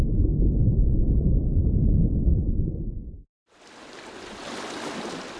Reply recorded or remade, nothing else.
recorded